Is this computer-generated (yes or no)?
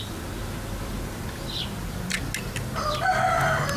no